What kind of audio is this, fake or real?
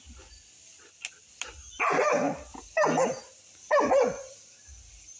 real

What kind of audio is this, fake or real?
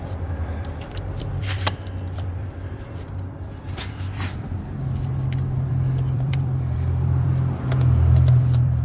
fake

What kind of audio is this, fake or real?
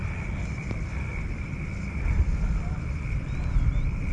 real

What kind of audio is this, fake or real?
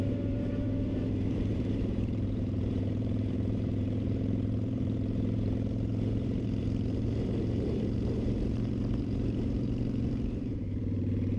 fake